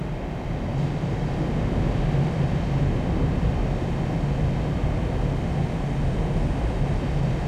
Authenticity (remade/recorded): recorded